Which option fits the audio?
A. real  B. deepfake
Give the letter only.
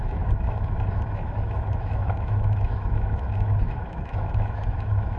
B